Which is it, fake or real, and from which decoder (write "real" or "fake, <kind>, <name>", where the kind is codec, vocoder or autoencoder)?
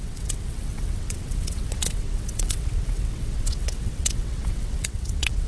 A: fake, vocoder, WaveNeXt